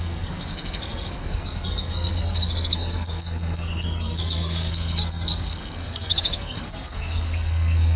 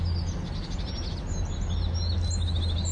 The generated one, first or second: first